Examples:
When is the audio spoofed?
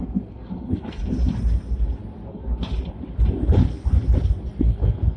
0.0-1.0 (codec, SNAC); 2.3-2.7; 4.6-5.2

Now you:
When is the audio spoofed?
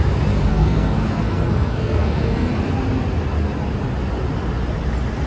0.5-2.5 (codec, SNAC)